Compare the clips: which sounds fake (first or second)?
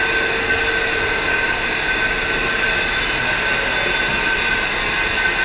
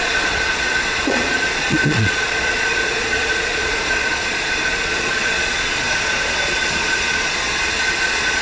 second